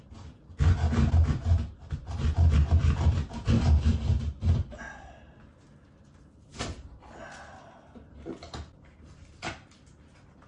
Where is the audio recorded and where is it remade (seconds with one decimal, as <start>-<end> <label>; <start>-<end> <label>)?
0.0-10.5 recorded